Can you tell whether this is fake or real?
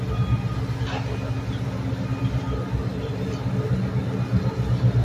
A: real